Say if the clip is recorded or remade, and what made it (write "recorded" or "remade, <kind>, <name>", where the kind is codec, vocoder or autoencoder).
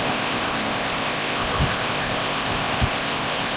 remade, codec, ZipCodec